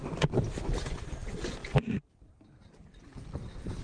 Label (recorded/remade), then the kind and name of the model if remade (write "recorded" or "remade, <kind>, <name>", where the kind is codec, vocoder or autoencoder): recorded